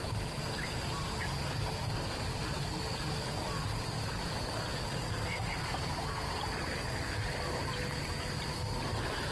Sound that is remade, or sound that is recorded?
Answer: recorded